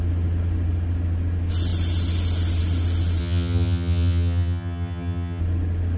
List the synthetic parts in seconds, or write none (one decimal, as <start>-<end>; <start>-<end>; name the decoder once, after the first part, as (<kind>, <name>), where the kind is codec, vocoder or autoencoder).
3.2-5.4 (vocoder, HiFi-GAN)